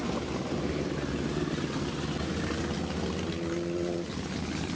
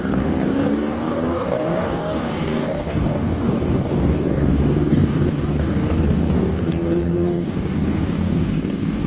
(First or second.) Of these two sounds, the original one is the first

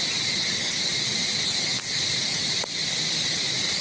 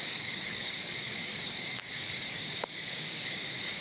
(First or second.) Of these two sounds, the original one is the first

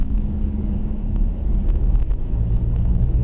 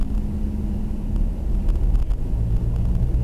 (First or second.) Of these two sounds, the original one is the second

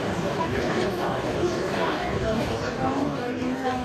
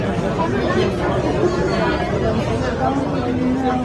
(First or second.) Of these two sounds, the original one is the second